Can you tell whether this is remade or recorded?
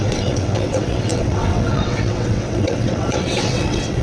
remade